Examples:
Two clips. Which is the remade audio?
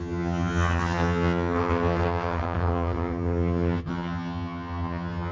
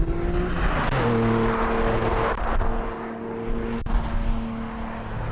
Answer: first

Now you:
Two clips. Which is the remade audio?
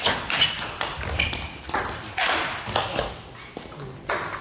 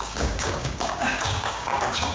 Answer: second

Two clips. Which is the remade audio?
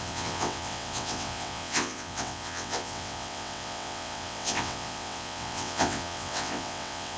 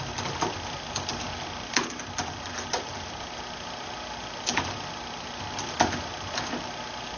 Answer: first